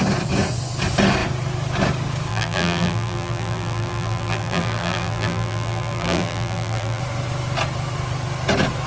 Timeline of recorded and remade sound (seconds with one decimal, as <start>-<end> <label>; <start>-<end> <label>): 0.0-2.3 recorded; 2.3-7.0 remade; 7.0-8.9 recorded